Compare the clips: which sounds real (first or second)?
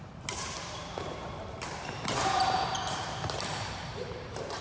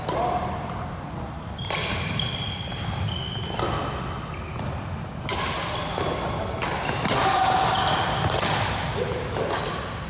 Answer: second